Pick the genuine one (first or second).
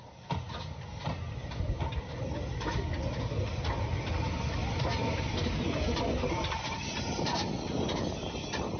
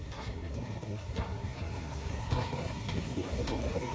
first